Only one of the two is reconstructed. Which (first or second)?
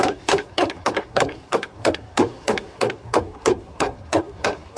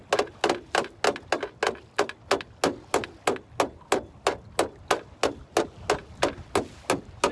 first